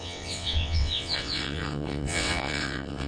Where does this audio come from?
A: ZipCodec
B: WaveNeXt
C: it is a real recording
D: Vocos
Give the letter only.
B